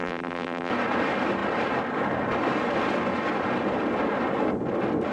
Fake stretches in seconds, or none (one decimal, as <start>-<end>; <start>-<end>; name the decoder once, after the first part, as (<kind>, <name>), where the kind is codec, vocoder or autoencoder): 0.0-0.7 (vocoder, BigVGAN v2)